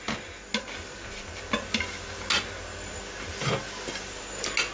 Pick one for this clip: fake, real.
real